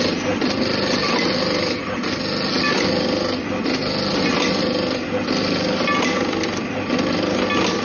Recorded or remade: recorded